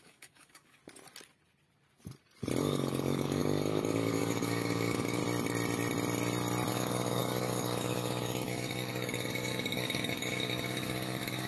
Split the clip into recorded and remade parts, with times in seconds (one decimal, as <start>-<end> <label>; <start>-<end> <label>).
0.0-0.8 remade; 0.8-2.6 recorded; 2.6-5.2 remade; 5.2-6.7 recorded; 6.7-11.5 remade